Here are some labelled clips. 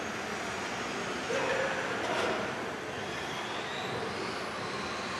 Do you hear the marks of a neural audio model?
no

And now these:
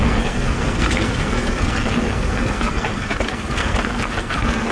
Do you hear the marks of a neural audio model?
yes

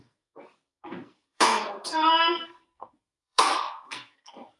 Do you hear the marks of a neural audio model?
yes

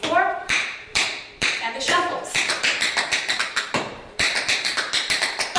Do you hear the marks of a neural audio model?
yes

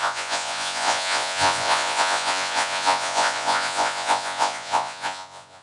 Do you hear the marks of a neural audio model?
yes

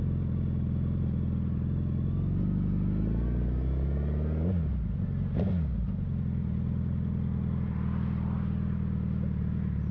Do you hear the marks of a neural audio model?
no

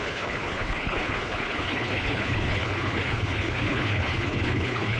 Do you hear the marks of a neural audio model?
yes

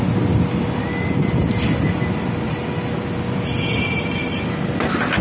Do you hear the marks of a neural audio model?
no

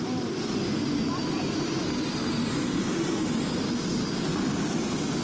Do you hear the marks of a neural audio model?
no